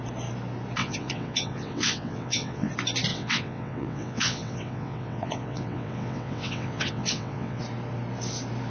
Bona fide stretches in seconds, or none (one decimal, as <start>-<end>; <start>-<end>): 0.0-0.8; 2.7-3.1; 7.6-8.7

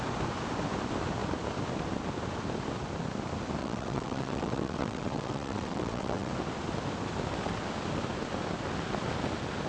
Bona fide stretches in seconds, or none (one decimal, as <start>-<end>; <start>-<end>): 0.0-3.6; 6.3-9.7

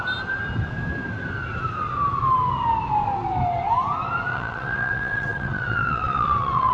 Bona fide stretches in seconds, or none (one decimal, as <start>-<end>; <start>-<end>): 0.0-4.3

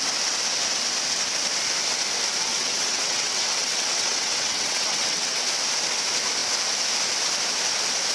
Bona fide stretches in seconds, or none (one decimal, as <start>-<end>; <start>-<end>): 0.0-2.5; 5.4-8.1

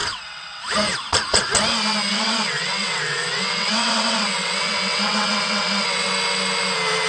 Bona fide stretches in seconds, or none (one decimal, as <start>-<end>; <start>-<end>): 0.6-2.1; 6.1-7.1

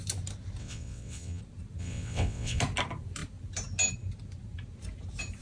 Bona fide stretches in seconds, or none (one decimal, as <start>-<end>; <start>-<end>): 0.0-0.6; 1.4-1.8; 2.6-5.4